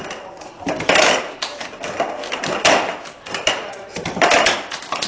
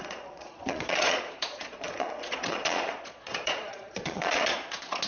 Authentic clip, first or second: first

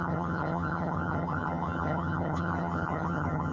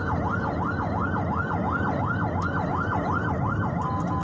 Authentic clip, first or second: second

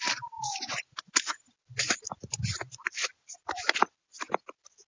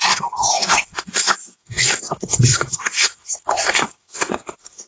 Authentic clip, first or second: first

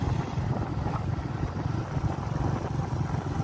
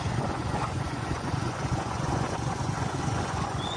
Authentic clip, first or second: first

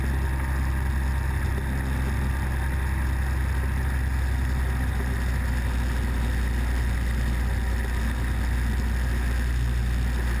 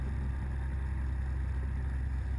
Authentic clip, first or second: first